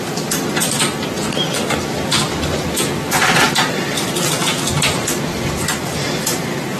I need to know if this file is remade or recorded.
recorded